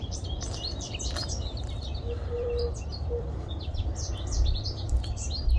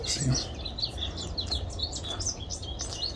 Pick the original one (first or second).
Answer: second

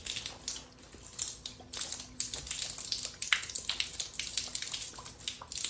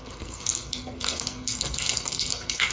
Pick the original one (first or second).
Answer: first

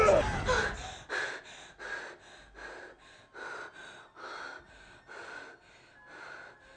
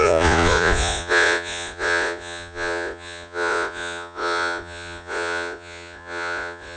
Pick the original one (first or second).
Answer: first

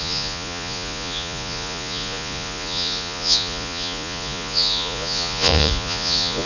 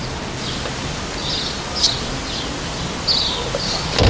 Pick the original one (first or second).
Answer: second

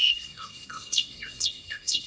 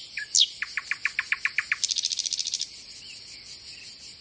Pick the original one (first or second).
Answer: second